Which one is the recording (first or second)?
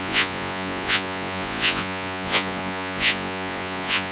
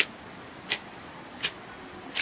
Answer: second